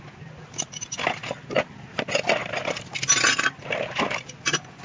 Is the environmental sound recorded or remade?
recorded